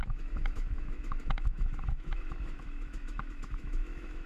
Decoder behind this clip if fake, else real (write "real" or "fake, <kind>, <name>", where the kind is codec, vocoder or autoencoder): fake, autoencoder, DAC-VAE